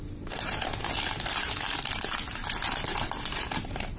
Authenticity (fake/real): real